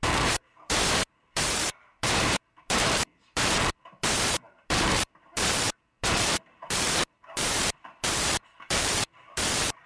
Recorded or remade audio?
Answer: remade